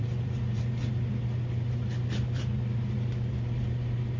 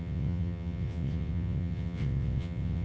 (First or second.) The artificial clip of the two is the second